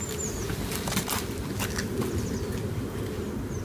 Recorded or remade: recorded